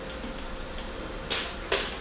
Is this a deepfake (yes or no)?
no